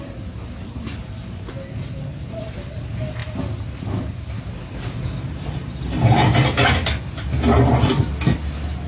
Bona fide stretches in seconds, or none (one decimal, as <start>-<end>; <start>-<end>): 0.0-8.9